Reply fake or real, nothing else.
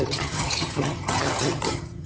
fake